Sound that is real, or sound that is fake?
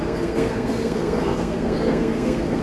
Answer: fake